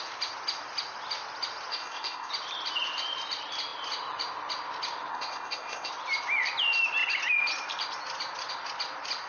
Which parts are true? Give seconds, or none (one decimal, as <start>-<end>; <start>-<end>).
0.0-1.7; 2.3-5.1; 5.9-9.3